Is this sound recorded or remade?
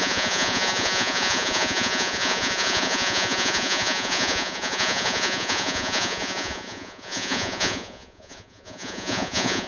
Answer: remade